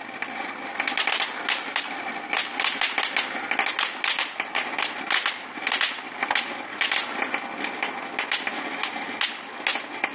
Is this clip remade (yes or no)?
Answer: no